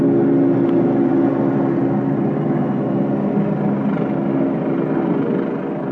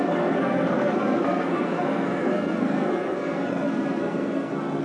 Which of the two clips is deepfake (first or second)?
second